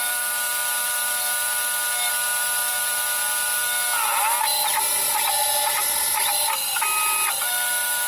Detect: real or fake real